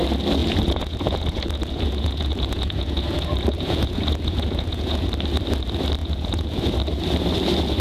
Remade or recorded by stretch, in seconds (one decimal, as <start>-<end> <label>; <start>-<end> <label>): 0.0-0.4 recorded; 0.4-5.1 remade; 5.1-6.0 recorded; 6.0-6.6 remade; 6.6-7.8 recorded